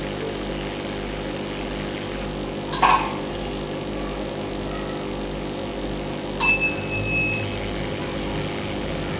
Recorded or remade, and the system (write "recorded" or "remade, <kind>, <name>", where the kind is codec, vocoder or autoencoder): recorded